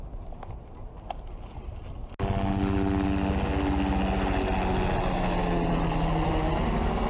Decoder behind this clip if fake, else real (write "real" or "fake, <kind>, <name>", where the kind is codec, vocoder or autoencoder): real